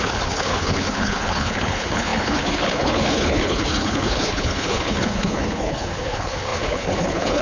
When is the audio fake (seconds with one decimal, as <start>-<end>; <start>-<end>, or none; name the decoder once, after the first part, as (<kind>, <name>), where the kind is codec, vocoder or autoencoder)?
0.0-7.4 (codec, HILCodec)